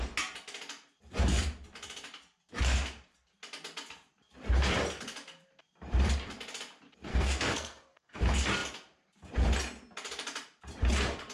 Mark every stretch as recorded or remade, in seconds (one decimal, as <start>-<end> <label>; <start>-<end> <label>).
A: 0.0-7.1 recorded; 7.1-8.2 remade; 8.2-11.3 recorded